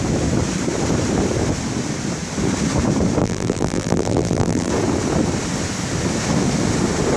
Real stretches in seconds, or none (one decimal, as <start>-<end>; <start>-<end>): 0.0-3.2; 4.7-7.2